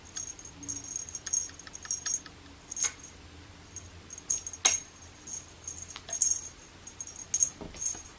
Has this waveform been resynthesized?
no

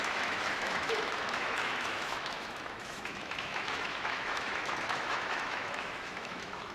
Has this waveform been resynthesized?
yes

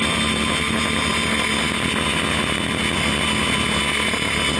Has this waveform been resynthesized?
no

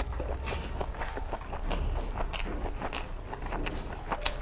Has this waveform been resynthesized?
no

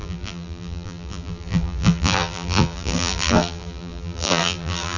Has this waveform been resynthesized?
yes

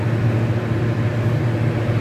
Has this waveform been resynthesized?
no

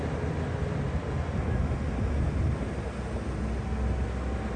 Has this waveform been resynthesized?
no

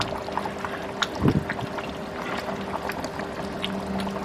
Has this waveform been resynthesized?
no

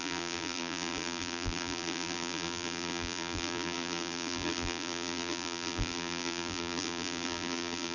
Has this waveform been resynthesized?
yes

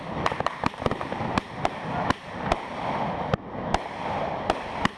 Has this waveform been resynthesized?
no